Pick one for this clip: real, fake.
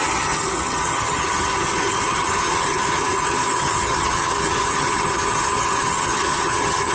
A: fake